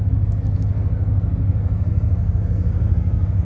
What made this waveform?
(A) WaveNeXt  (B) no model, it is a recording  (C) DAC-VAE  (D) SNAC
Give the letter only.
D